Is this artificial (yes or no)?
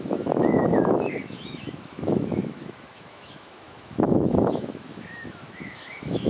yes